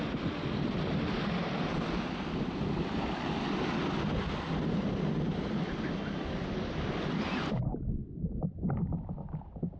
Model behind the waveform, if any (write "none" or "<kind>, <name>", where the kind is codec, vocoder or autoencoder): none